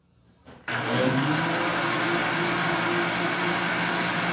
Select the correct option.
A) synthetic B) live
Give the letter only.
B